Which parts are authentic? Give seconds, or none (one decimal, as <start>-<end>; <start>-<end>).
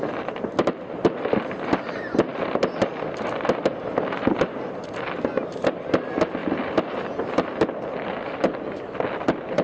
0.0-9.6